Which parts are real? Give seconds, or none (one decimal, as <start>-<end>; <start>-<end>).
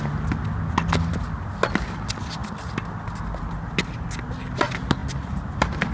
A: 0.0-5.9